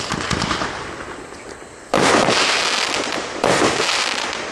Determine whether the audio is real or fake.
real